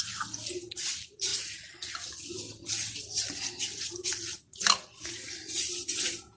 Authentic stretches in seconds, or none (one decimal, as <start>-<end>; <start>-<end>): 0.0-6.4